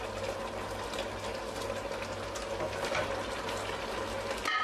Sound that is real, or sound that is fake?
real